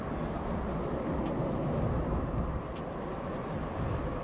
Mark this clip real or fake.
fake